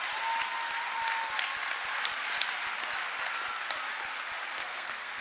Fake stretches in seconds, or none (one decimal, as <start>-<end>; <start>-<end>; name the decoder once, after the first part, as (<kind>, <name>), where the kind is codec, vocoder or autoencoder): 4.6-5.2 (codec, SNAC)